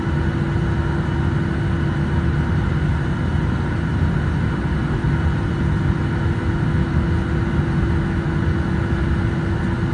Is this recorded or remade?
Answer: recorded